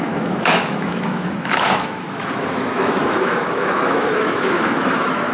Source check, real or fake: fake